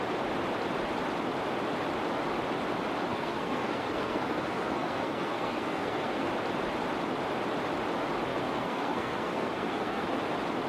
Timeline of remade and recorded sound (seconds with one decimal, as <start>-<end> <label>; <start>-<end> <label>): 0.0-3.1 recorded; 3.1-6.3 remade; 6.3-8.3 recorded; 8.3-10.2 remade; 10.2-10.7 recorded